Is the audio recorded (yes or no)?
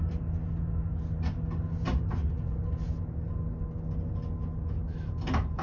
yes